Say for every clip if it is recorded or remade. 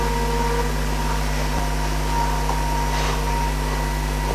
recorded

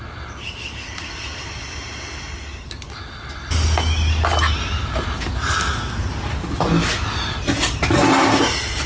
recorded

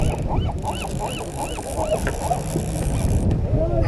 recorded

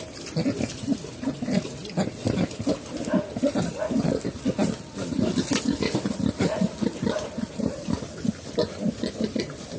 recorded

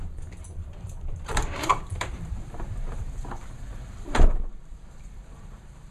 remade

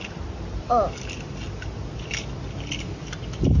recorded